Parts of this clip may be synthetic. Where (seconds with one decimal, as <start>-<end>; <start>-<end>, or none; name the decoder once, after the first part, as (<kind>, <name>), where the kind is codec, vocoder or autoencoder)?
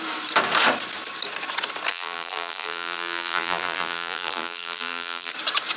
1.9-5.3 (vocoder, BigVGAN v2)